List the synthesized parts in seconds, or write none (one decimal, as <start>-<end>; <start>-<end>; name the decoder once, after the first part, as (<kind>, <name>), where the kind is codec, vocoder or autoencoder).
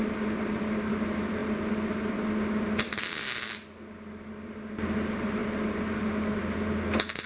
none